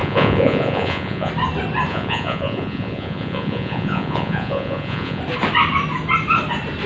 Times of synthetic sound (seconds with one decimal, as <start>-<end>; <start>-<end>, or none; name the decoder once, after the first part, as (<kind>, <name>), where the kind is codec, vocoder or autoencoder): 0.0-1.3 (vocoder, Vocos); 1.9-5.2